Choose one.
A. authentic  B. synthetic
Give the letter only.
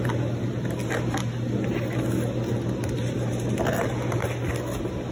A